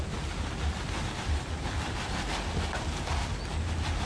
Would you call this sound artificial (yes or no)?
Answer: no